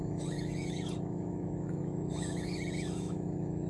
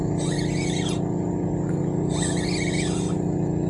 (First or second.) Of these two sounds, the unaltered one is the second